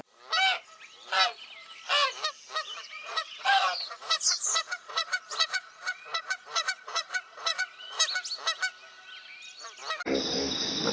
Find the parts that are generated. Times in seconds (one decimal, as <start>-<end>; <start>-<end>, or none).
2.8-8.0